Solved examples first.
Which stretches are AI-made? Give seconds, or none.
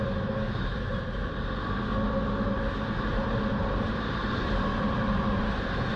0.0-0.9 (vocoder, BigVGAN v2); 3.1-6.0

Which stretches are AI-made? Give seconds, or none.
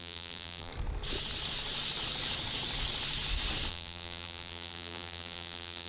0.0-0.7 (vocoder, BigVGAN v2); 3.7-5.9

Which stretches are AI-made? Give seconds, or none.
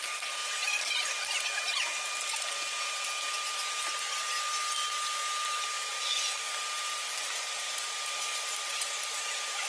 none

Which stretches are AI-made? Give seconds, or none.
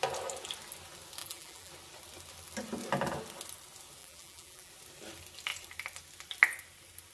1.2-1.7 (vocoder, BigVGAN v2); 4.0-4.7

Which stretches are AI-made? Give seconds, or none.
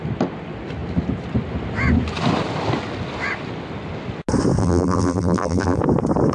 4.6-5.8 (vocoder, BigVGAN v2)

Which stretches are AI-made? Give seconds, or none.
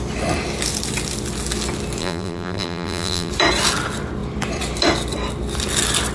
2.0-3.3 (vocoder, BigVGAN v2)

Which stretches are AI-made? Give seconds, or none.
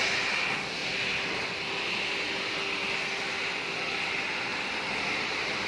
0.8-1.5 (vocoder, BigVGAN v2); 4.5-5.7